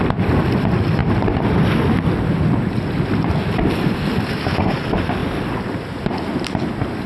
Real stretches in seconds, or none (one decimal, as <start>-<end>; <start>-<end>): 0.0-7.1